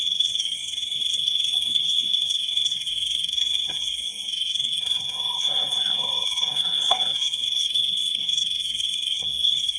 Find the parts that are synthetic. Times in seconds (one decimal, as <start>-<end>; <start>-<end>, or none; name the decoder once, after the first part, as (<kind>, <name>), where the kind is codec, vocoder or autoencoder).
0.0-9.8 (codec, SNAC)